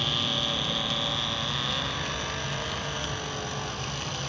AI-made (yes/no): no